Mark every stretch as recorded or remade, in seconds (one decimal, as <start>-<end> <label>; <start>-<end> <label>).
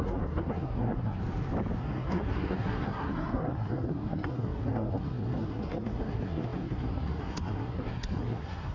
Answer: 0.0-1.2 remade; 1.2-1.8 recorded; 1.8-8.7 remade